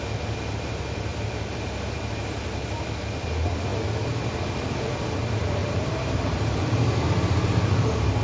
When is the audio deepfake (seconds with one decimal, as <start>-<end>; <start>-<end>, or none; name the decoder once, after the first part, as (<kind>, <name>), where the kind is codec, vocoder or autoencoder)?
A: 5.6-6.6 (vocoder, BigVGAN v2)